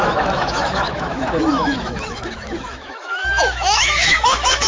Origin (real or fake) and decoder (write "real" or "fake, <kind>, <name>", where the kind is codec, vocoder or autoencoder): fake, autoencoder, DAC-VAE